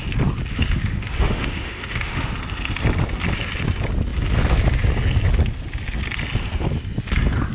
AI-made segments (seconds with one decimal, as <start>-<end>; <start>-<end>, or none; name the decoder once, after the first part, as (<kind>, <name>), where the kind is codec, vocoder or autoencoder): 0.5-2.3 (autoencoder, DAC-VAE)